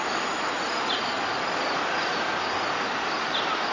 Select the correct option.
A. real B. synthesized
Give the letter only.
A